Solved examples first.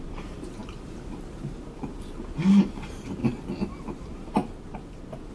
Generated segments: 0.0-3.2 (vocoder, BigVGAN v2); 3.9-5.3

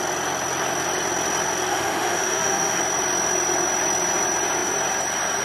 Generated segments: 1.7-2.8 (autoencoder, DAC-VAE)

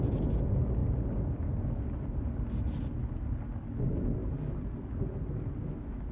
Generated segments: none

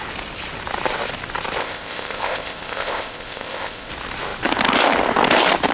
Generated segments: 1.6-3.9 (codec, ZipCodec)

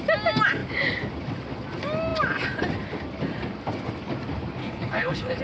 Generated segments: 4.6-5.4 (codec, HILCodec)